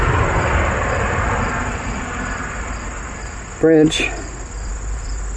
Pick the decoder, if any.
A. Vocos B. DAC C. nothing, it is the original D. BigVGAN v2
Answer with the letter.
C